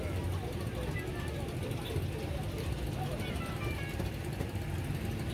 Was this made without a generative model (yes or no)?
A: yes